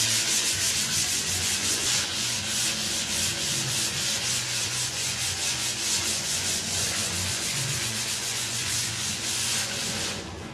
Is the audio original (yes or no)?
no